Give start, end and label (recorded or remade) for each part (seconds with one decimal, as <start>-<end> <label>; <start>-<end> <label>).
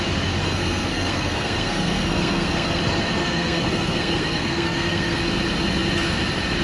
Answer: 0.0-0.4 recorded; 0.4-2.8 remade; 2.8-3.2 recorded; 3.2-5.2 remade; 5.2-6.6 recorded